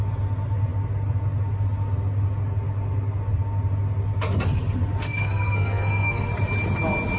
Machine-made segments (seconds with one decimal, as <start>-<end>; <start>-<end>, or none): 5.2-6.3